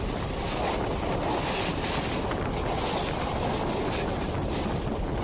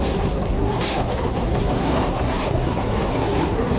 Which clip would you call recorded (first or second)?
first